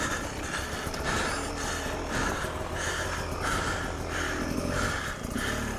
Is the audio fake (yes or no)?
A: no